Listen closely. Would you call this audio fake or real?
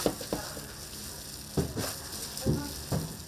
real